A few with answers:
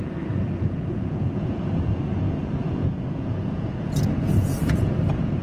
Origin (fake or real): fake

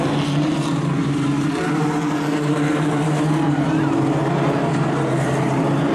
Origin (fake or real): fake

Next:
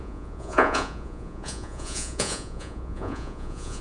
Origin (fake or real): fake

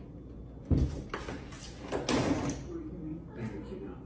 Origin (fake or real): real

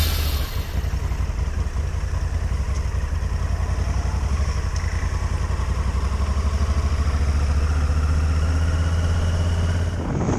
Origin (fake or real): real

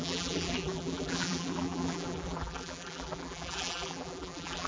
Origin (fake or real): fake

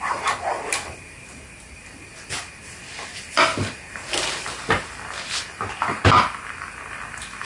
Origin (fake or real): real